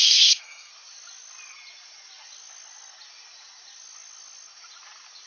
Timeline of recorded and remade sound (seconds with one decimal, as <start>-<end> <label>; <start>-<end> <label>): 0.0-0.7 remade; 0.7-5.3 recorded